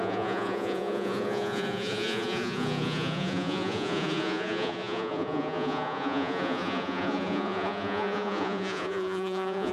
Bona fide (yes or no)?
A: no